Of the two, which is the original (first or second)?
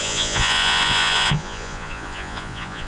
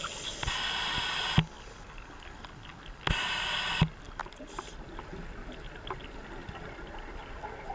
second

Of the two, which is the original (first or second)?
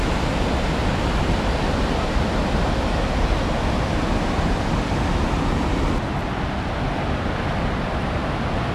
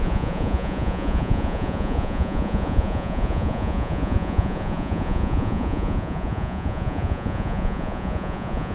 first